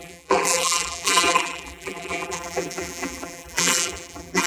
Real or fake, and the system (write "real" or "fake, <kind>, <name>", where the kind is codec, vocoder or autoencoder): fake, vocoder, BigVGAN v2